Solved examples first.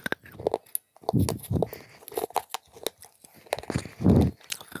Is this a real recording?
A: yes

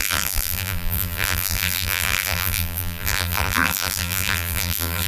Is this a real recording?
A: no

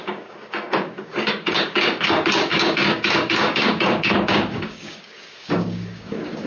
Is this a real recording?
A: no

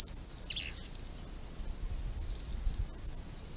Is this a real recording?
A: yes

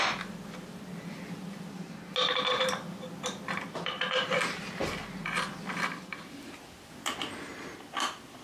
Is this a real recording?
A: yes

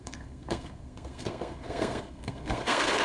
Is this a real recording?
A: no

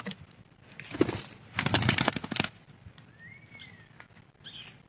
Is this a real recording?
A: yes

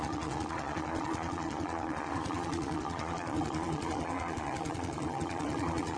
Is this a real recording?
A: no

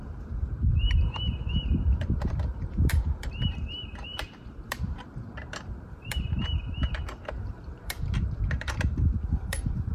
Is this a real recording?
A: no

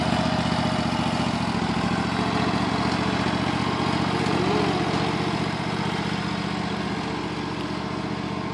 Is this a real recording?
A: yes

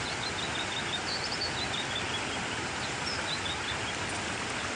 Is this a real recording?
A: yes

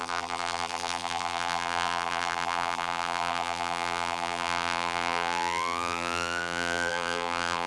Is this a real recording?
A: no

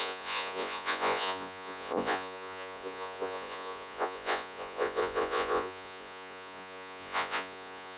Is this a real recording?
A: no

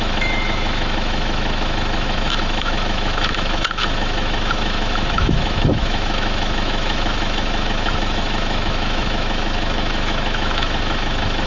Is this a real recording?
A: no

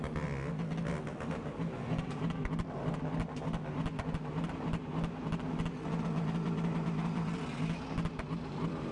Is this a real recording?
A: yes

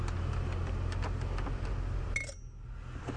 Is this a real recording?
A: yes